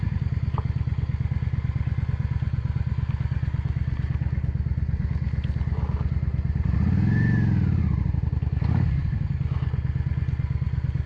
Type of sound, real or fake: real